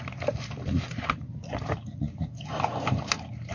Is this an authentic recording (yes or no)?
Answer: no